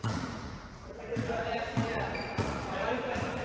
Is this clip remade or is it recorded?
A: remade